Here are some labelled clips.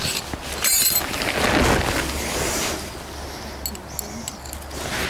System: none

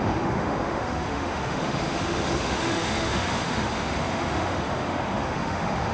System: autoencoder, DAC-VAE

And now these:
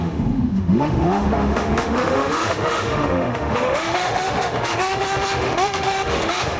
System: autoencoder, DAC-VAE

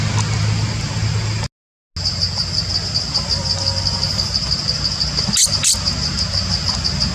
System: none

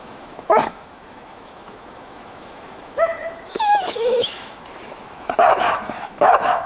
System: autoencoder, DAC-VAE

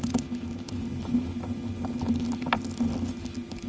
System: none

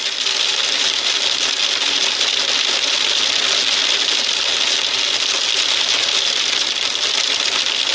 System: none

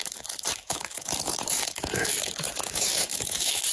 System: autoencoder, DAC-VAE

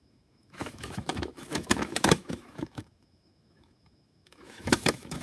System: autoencoder, DAC-VAE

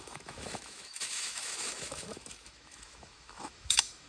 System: autoencoder, DAC-VAE